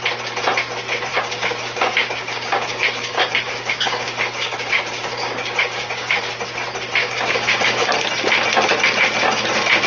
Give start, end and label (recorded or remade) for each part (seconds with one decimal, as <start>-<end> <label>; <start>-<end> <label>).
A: 0.0-1.1 recorded; 1.1-6.2 remade; 6.2-7.0 recorded; 7.0-7.9 remade; 7.9-9.9 recorded